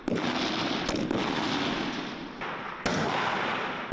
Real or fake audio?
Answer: real